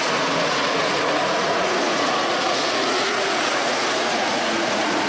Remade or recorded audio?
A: remade